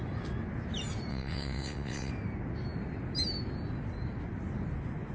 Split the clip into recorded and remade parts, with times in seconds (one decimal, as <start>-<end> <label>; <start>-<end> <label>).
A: 0.0-1.1 recorded; 1.1-2.1 remade; 2.1-5.1 recorded